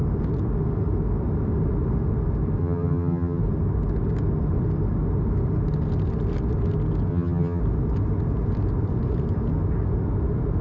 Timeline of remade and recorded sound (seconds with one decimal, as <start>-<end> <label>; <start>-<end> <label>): 0.0-2.6 recorded; 2.6-3.4 remade; 3.4-7.1 recorded; 7.1-7.6 remade; 7.6-10.6 recorded